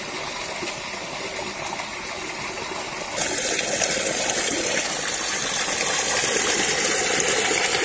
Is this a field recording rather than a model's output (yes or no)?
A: yes